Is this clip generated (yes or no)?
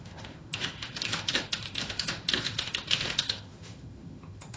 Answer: yes